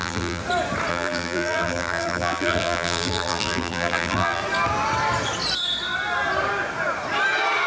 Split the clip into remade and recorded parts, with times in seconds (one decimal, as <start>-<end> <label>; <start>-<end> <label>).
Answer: 0.0-0.4 remade; 0.4-0.9 recorded; 0.9-4.4 remade; 4.4-7.7 recorded